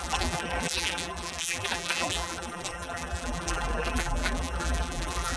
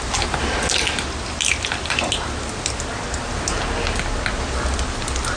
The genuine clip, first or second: second